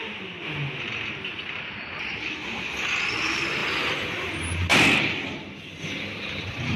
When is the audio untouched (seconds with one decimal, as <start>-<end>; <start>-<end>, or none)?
0.0-6.8